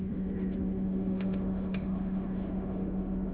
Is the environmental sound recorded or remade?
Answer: remade